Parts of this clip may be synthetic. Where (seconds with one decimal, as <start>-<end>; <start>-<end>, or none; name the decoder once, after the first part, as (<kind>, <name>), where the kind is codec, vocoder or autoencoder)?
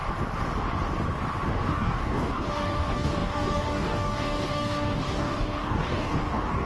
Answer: 1.5-6.7 (codec, DAC)